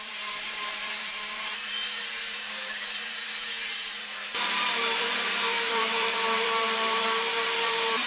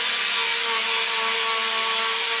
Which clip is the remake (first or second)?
first